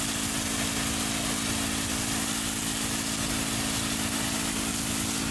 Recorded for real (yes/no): yes